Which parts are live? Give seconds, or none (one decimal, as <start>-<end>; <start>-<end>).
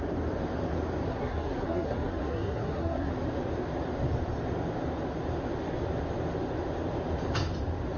0.0-1.1; 3.1-8.0